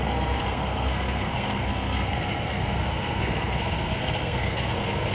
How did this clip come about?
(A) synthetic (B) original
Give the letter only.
A